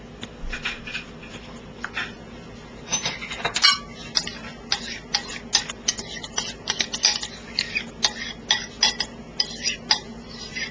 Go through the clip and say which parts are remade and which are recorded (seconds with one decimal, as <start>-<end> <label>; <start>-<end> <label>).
0.0-10.7 recorded